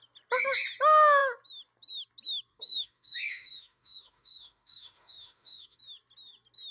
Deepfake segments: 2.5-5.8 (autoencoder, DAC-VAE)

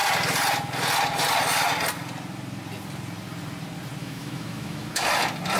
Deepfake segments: 4.0-5.0 (autoencoder, DAC-VAE)

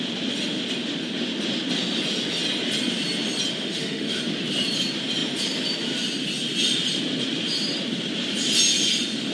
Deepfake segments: 3.5-4.2 (autoencoder, DAC-VAE)

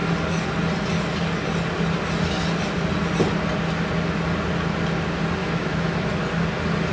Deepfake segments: 5.4-6.1 (autoencoder, DAC-VAE)

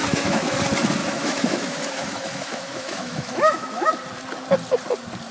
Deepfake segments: 0.0-0.6 (autoencoder, DAC-VAE); 1.0-3.9

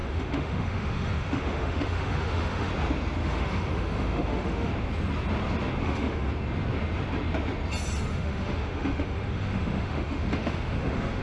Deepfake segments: 0.0-2.7 (autoencoder, DAC-VAE); 3.2-4.7; 5.8-6.3; 8.1-11.2